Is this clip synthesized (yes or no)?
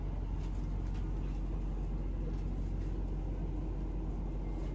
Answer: no